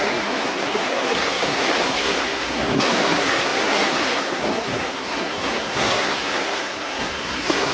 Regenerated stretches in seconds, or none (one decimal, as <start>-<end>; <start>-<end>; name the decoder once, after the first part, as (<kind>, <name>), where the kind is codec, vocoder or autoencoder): 0.0-7.7 (codec, SNAC)